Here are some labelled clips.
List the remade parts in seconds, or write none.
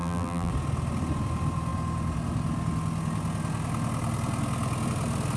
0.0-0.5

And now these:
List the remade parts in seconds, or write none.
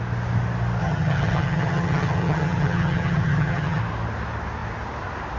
0.8-3.8